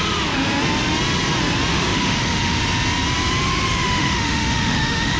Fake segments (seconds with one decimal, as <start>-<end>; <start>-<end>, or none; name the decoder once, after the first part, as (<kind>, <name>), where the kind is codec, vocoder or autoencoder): 1.7-2.6 (autoencoder, DAC-VAE); 3.5-5.2